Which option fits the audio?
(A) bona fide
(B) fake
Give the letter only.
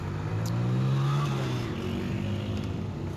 A